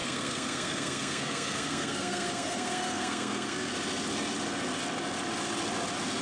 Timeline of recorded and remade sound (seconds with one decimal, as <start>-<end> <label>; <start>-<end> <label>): 0.0-3.7 remade; 3.7-6.2 recorded